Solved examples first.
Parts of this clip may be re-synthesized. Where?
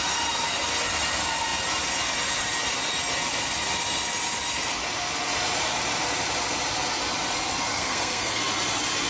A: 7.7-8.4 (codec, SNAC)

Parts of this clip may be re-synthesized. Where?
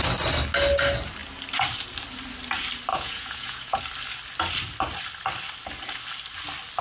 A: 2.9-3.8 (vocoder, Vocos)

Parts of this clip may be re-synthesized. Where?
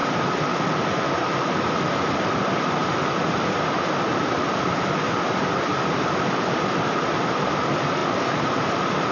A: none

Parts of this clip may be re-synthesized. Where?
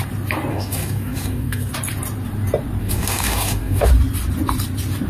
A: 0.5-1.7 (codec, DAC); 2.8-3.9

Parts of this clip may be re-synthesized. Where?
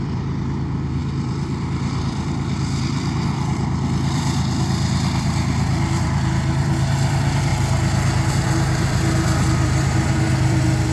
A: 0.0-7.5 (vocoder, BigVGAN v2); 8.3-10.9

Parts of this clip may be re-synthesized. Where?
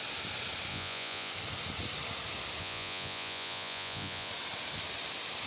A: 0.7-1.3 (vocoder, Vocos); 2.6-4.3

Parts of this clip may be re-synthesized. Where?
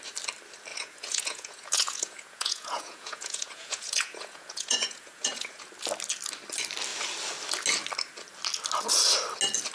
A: 0.7-5.6 (vocoder, Vocos)